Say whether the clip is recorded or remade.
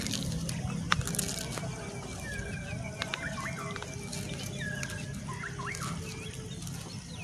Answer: recorded